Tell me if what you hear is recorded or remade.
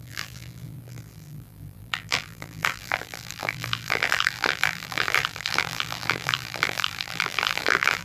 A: remade